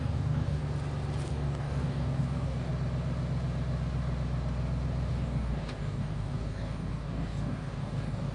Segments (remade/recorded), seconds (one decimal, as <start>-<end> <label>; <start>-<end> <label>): 0.0-0.6 remade; 0.6-1.3 recorded; 1.3-2.7 remade; 2.7-5.1 recorded; 5.1-8.3 remade